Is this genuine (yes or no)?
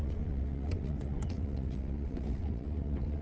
no